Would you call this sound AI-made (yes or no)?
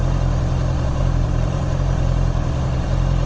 yes